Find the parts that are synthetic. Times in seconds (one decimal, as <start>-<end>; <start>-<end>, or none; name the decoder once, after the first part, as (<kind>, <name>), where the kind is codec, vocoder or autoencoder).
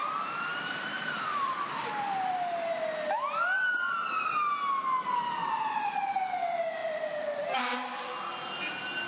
0.5-2.7 (vocoder, BigVGAN v2); 5.4-6.0; 6.8-8.0